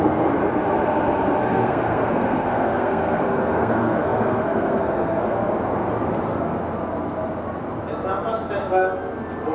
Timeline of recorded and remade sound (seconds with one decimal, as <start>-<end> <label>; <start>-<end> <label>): 0.0-1.4 recorded; 1.4-5.5 remade; 5.5-9.5 recorded